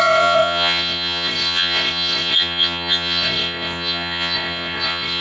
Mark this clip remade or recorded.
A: remade